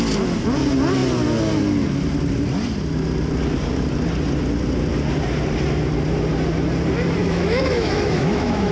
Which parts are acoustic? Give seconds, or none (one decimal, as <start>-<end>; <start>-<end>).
0.0-7.2